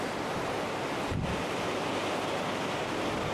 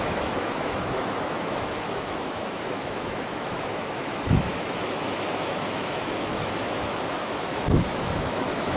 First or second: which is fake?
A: second